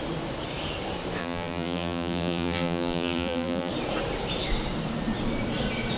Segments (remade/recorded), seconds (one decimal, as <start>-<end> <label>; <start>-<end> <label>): 0.0-1.2 recorded; 1.2-3.7 remade; 3.7-6.0 recorded